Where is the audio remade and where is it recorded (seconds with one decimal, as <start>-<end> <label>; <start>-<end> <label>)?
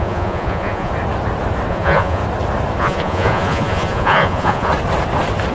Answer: 0.0-0.9 remade; 0.9-1.7 recorded; 1.7-2.2 remade; 2.2-2.8 recorded; 2.8-4.7 remade; 4.7-5.5 recorded